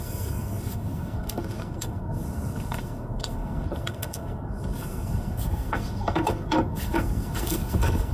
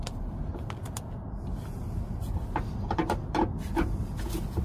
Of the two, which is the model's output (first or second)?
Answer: first